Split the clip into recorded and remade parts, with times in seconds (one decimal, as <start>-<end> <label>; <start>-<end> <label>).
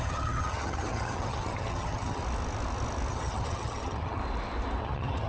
0.0-2.2 remade; 2.2-3.1 recorded; 3.1-4.2 remade; 4.2-4.8 recorded; 4.8-5.3 remade